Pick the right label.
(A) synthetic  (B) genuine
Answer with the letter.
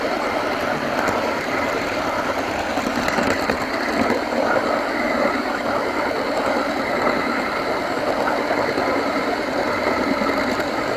B